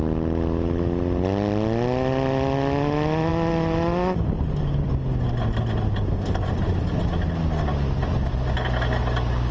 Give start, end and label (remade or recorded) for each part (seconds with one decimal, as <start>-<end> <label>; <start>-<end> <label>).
0.0-9.5 recorded